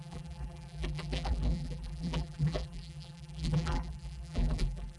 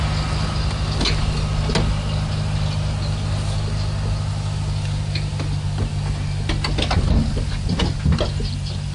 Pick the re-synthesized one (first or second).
first